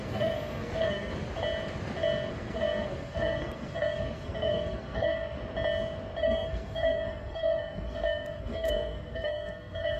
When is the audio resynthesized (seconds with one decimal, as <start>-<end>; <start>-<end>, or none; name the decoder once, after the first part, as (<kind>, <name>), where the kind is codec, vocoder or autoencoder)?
0.0-1.1 (codec, SNAC); 2.3-5.4; 6.2-10.0